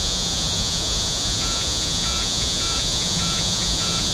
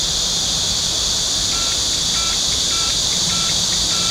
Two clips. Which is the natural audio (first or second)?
second